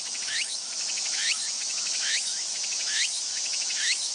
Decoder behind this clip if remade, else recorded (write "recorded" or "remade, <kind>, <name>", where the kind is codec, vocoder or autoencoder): remade, autoencoder, DAC-VAE